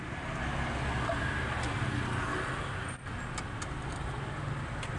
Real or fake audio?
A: real